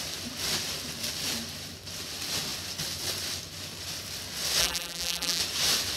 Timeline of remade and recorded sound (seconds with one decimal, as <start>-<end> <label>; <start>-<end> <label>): 0.0-4.6 recorded; 4.6-5.4 remade; 5.4-6.0 recorded